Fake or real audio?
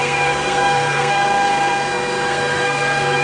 fake